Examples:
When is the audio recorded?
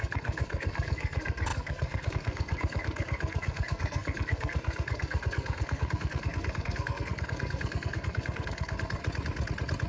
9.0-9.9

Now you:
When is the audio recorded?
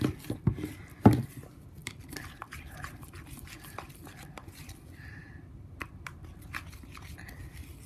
0.0-1.8; 5.9-7.9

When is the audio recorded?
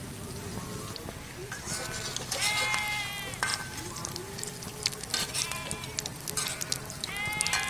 0.0-7.7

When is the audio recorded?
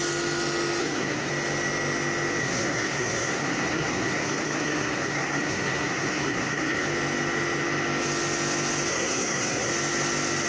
0.0-0.8; 1.3-2.4; 6.9-8.9; 9.7-10.5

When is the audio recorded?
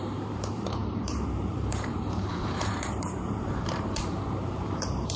none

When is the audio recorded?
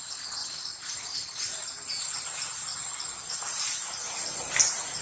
0.0-5.0